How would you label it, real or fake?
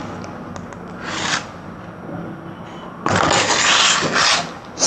real